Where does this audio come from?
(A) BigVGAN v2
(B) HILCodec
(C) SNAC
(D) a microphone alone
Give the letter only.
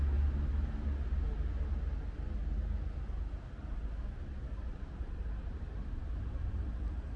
D